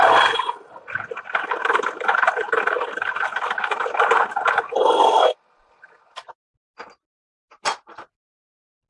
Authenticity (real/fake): real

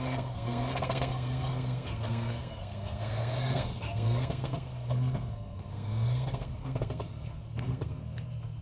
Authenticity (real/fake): fake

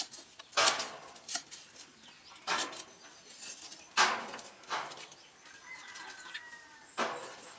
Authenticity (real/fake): real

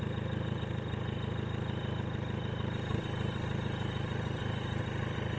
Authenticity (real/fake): real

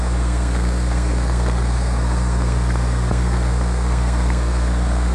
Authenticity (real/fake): fake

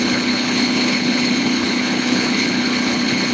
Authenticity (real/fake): fake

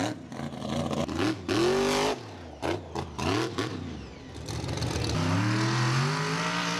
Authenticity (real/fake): real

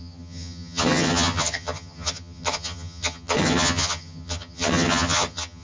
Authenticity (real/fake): fake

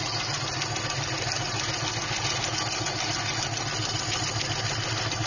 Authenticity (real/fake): real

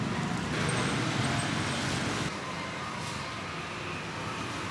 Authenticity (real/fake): real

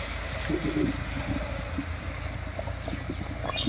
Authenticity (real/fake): real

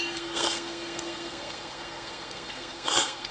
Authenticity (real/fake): fake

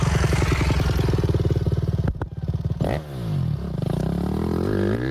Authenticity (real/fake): real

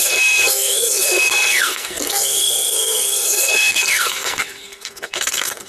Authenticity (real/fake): fake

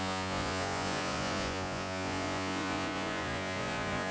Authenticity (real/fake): fake